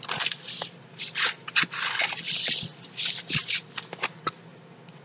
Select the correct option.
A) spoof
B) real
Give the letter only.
B